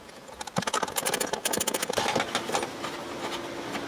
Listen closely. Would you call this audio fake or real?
real